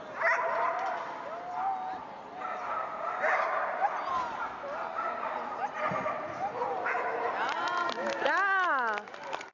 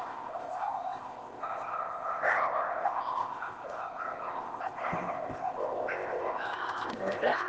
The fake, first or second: second